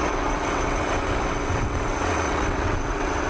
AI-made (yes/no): yes